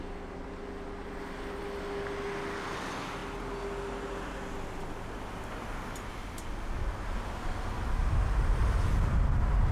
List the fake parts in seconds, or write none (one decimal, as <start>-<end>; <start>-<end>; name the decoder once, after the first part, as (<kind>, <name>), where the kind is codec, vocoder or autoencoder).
none